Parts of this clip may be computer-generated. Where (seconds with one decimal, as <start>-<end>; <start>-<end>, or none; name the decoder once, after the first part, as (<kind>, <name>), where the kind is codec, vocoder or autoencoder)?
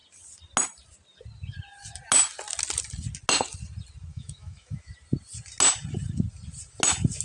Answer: 4.1-4.9 (autoencoder, DAC-VAE)